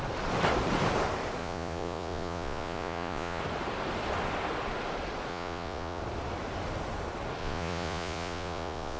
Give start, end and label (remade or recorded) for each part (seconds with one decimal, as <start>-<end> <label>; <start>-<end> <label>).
0.0-1.4 recorded; 1.4-3.4 remade; 3.4-5.3 recorded; 5.3-6.0 remade; 6.0-7.4 recorded; 7.4-9.0 remade